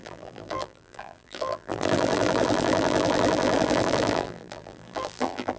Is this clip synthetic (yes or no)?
yes